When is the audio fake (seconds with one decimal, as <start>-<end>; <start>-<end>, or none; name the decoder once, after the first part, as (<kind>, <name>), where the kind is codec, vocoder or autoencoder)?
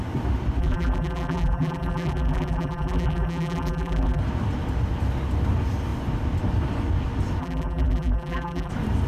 0.6-4.2 (vocoder, BigVGAN v2); 7.4-8.7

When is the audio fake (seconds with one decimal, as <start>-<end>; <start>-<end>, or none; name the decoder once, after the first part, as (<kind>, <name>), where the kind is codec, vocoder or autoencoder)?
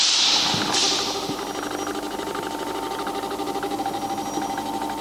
none